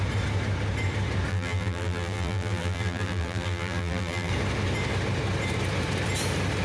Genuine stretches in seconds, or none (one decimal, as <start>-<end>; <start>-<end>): 0.0-1.3; 4.3-6.6